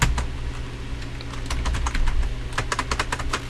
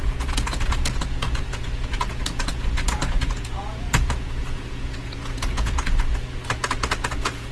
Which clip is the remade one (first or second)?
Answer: second